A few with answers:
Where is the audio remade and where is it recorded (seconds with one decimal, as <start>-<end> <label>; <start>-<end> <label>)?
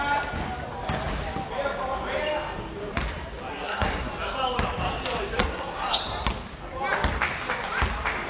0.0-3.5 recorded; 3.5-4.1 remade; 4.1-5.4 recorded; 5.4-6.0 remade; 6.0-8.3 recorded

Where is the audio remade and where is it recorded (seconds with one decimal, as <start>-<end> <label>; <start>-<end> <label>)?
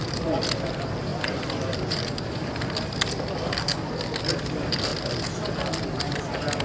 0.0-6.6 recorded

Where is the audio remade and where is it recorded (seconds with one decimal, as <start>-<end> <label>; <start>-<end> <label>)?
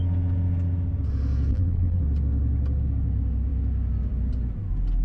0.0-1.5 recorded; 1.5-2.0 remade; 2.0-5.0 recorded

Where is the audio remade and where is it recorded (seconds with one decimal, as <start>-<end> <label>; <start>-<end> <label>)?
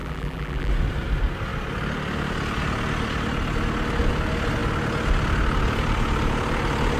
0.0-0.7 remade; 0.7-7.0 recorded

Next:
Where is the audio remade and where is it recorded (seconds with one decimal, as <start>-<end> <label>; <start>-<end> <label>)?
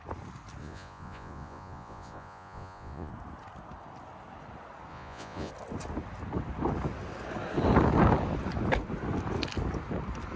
0.0-0.6 recorded; 0.6-3.1 remade; 3.1-4.9 recorded; 4.9-5.5 remade; 5.5-10.4 recorded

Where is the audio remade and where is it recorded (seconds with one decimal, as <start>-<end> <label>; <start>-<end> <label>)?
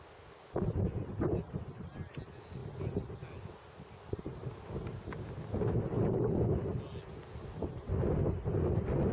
0.0-9.1 recorded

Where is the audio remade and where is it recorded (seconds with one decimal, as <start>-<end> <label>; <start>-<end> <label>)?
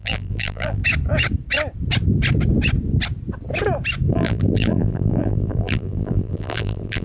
0.0-0.8 remade; 0.8-4.1 recorded; 4.1-7.0 remade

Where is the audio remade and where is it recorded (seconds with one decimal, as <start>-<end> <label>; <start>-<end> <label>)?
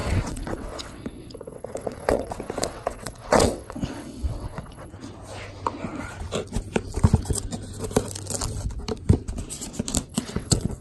0.0-4.9 remade; 4.9-10.1 recorded; 10.1-10.8 remade